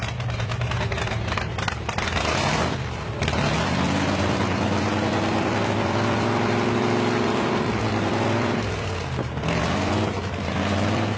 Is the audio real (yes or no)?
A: no